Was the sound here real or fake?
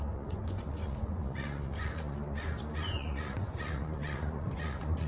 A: fake